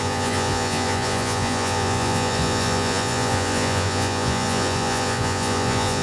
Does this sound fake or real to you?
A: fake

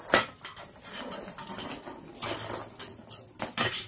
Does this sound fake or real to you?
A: real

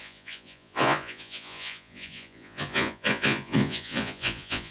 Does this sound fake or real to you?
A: fake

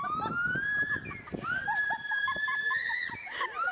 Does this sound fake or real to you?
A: real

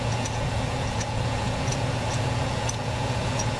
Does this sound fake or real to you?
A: fake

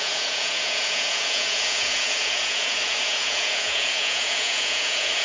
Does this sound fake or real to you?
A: fake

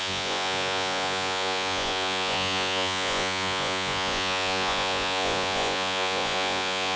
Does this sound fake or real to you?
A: fake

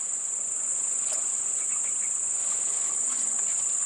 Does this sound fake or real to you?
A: fake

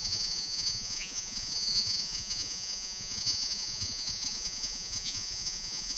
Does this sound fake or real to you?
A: fake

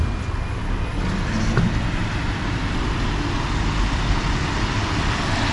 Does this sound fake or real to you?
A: real